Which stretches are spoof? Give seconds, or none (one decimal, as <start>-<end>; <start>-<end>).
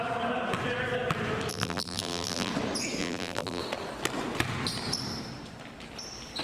1.5-2.5; 3.0-3.6